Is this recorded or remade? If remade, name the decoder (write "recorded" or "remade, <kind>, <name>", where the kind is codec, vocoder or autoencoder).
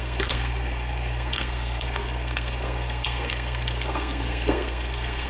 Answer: remade, codec, SNAC